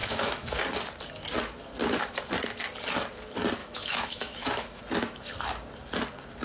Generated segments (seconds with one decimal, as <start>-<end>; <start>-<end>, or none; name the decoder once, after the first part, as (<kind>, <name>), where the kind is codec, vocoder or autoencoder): 0.0-0.6 (autoencoder, DAC-VAE); 3.6-4.8